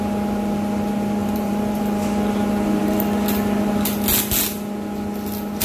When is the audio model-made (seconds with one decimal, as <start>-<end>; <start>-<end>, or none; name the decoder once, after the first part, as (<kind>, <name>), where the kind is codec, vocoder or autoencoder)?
1.2-1.8 (vocoder, BigVGAN v2)